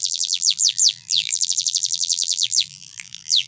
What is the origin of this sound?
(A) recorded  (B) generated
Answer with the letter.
B